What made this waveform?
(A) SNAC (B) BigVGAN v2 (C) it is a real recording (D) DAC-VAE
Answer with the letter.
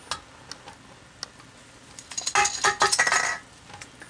C